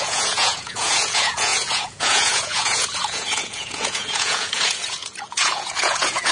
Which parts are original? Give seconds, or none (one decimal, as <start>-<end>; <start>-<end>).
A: none